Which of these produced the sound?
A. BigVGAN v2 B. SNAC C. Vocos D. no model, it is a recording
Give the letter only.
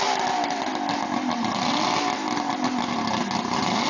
D